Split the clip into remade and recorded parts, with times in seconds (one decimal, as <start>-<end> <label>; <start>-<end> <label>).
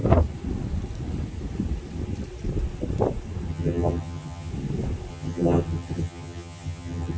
0.0-3.5 recorded; 3.5-4.5 remade; 4.5-5.1 recorded; 5.1-7.2 remade